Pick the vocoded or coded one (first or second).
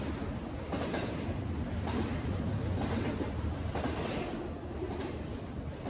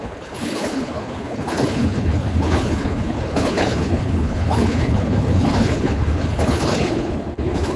second